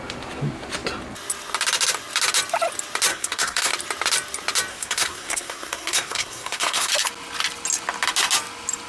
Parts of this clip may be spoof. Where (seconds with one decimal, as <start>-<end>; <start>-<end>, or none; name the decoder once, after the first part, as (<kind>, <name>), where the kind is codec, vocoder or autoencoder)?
3.1-3.7 (codec, SNAC); 4.7-6.9